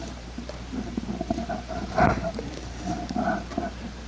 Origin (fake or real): fake